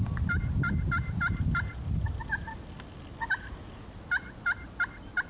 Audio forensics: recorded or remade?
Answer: recorded